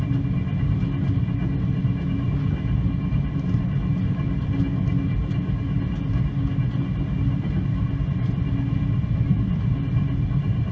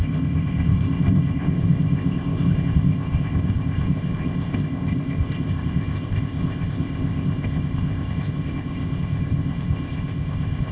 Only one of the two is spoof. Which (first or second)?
second